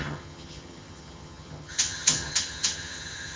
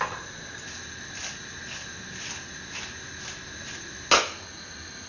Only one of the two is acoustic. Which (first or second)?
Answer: second